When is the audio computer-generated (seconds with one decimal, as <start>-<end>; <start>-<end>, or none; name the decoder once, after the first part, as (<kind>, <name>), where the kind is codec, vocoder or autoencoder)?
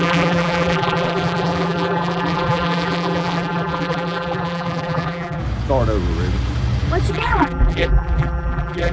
0.0-5.4 (vocoder, BigVGAN v2); 7.1-8.9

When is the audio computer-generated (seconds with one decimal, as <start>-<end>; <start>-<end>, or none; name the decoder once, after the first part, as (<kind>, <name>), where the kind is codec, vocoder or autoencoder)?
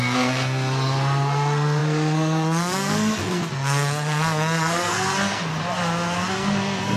0.0-5.5 (codec, SNAC); 6.3-7.0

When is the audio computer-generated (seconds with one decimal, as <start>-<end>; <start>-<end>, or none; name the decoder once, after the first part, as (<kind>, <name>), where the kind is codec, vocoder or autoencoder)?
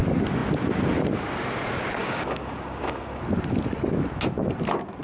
2.0-3.2 (codec, DAC)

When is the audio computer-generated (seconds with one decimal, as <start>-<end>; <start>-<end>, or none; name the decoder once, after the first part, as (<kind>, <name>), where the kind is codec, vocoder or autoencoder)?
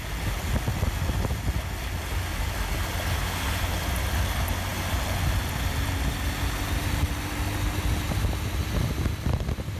none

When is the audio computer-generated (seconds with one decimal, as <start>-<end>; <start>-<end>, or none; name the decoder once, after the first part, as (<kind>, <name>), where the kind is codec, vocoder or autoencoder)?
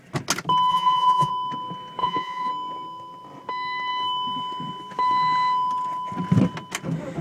0.7-1.3 (vocoder, Vocos); 2.0-2.5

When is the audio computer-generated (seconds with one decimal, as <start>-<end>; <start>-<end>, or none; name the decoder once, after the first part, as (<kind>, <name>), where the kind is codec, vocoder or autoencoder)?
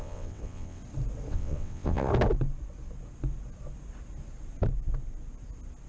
0.0-0.8 (vocoder, WaveNeXt); 1.3-2.1